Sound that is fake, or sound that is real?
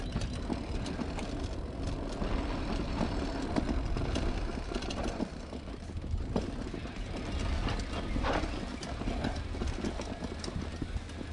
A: real